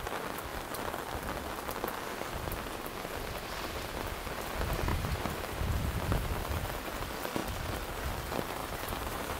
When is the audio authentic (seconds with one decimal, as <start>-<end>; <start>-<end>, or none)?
0.0-4.9; 5.8-8.6